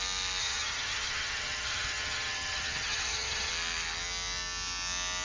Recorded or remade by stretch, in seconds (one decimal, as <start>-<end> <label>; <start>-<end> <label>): 0.0-0.4 recorded; 0.4-3.5 remade; 3.5-5.2 recorded